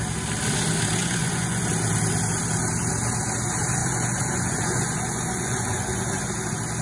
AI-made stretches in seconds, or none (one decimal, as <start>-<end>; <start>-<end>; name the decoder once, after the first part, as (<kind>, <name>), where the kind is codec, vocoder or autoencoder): 1.0-1.6 (vocoder, Vocos); 3.8-6.3